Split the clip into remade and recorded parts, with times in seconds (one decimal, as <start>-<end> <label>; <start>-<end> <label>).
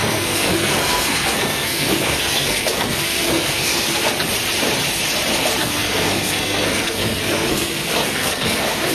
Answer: 0.0-4.1 remade; 4.1-5.6 recorded; 5.6-8.9 remade